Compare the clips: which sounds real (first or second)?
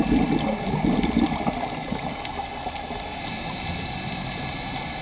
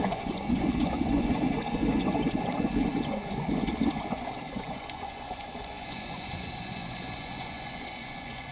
first